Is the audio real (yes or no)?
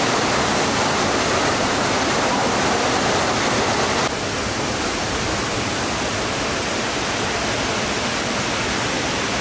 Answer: yes